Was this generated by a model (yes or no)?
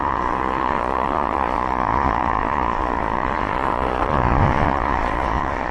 yes